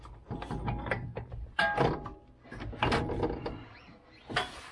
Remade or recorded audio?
recorded